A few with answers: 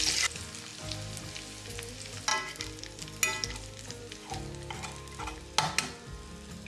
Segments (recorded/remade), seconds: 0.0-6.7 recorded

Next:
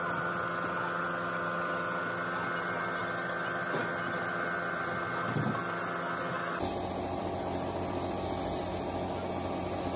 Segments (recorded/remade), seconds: 0.0-10.0 recorded

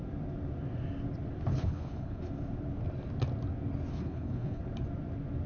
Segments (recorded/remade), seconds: 0.0-1.5 recorded; 1.5-2.2 remade; 2.2-3.9 recorded; 3.9-4.6 remade; 4.6-5.5 recorded

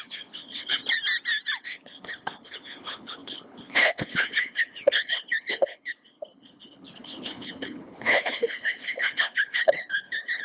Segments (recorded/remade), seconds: 0.0-0.8 remade; 0.8-1.6 recorded; 1.6-10.4 remade